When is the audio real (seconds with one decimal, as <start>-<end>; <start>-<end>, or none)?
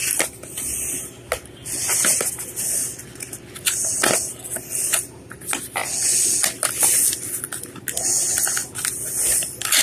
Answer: 0.0-9.8